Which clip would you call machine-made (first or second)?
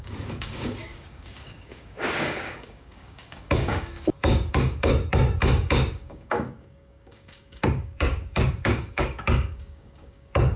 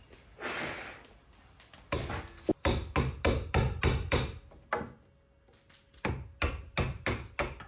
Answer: first